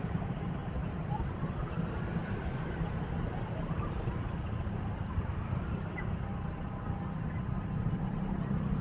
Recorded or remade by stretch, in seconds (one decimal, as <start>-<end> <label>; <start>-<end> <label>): 0.0-8.8 recorded